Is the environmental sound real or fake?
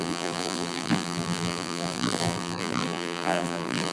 fake